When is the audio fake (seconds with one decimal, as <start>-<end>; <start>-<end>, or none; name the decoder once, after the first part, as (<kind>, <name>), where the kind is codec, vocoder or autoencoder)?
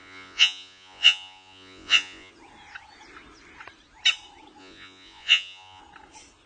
0.0-2.3 (vocoder, Vocos); 4.6-5.8